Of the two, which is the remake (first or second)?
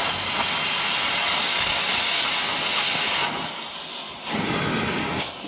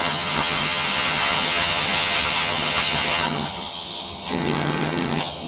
second